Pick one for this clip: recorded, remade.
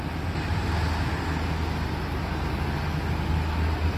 recorded